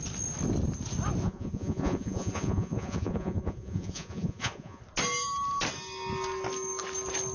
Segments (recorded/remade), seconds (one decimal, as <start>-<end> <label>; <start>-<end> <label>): 0.0-1.2 recorded; 1.2-4.8 remade; 4.8-7.3 recorded